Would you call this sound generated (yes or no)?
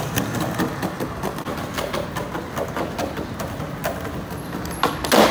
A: no